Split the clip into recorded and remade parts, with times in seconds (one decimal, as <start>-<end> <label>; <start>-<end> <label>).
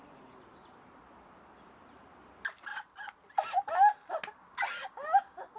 0.0-5.6 recorded